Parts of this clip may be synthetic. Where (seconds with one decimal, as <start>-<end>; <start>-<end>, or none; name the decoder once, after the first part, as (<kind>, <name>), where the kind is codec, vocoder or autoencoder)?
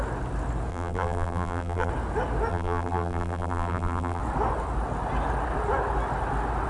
0.7-1.9 (vocoder, BigVGAN v2); 2.5-4.2